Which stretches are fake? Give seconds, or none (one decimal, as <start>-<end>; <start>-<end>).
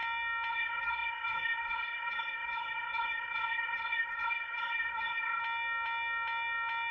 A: 0.5-5.4